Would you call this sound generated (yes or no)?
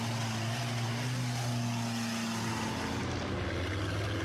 no